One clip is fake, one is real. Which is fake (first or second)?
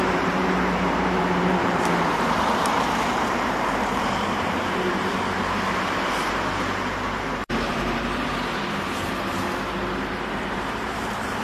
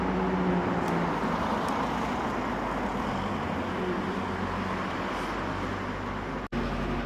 first